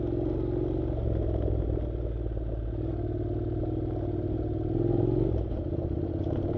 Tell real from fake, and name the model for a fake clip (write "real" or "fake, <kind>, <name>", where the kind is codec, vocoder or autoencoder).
real